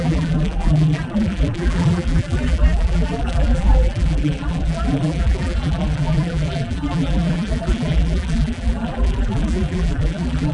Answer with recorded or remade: remade